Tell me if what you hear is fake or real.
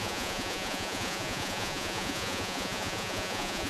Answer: fake